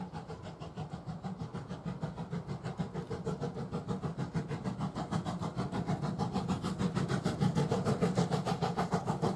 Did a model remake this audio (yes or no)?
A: no